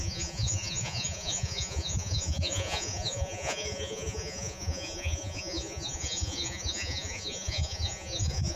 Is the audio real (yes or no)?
no